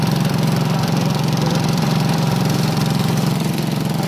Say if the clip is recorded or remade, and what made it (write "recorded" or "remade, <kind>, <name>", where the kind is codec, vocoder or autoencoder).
remade, vocoder, BigVGAN v2